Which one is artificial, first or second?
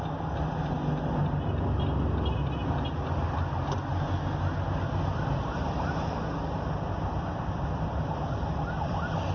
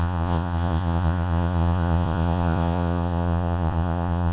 second